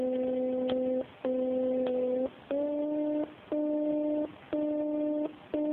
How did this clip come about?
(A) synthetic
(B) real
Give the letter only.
B